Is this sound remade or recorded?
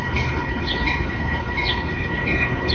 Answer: remade